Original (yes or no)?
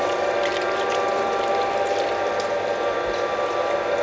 yes